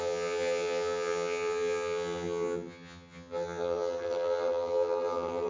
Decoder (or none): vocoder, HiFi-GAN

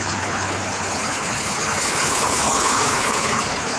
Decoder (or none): codec, HILCodec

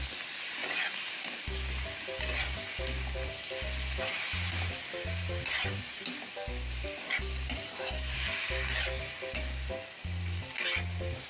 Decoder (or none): none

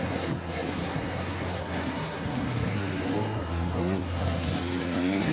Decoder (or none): codec, SNAC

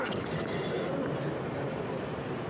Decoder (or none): none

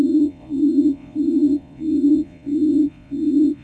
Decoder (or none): vocoder, Vocos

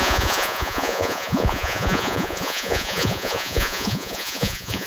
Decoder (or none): vocoder, Vocos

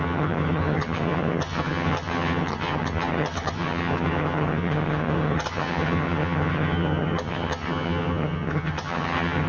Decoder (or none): vocoder, HiFi-GAN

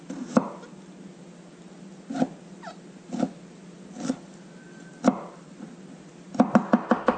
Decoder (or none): none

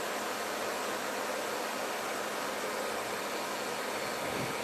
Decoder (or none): none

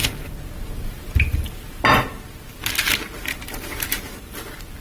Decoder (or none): none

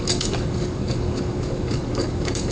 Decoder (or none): codec, DAC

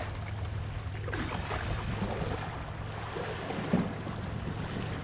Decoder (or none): none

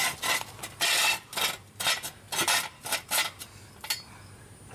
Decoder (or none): none